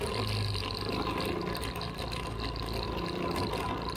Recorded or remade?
recorded